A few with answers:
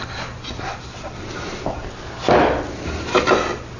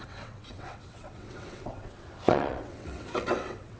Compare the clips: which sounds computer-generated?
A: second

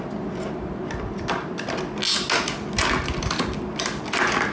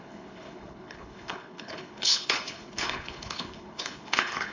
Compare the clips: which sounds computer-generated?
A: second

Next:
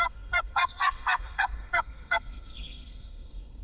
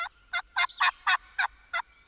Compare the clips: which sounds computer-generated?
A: first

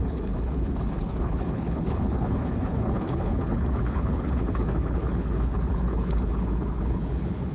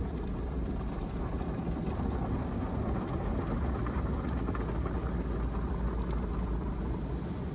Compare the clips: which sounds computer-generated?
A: first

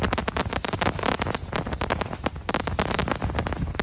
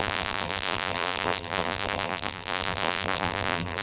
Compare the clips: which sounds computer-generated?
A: second